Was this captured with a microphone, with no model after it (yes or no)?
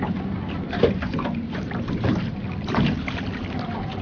yes